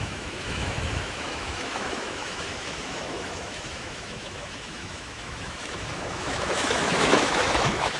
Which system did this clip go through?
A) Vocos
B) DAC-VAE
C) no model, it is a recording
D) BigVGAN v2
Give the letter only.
B